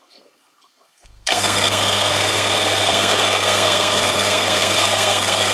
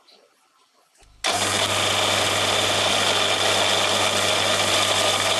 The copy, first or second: first